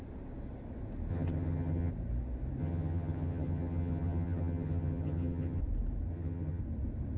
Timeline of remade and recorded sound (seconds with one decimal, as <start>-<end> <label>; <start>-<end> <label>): 0.0-1.1 recorded; 1.1-1.9 remade; 1.9-2.6 recorded; 2.6-5.6 remade; 5.6-6.1 recorded; 6.1-6.6 remade; 6.6-7.2 recorded